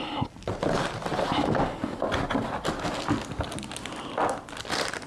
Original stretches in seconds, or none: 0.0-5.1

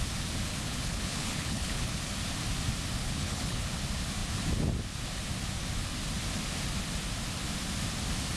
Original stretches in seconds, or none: 0.0-0.5; 1.9-3.0; 3.6-8.4

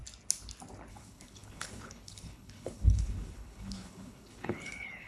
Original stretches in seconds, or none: 0.0-0.9

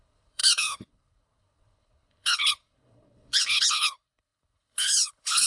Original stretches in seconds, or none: none

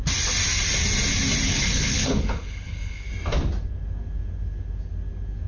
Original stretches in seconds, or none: 0.0-1.6; 3.1-5.5